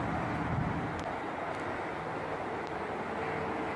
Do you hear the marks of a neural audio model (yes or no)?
no